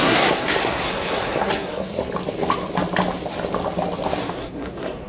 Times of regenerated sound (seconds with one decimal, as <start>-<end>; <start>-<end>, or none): 0.0-2.0; 4.3-5.1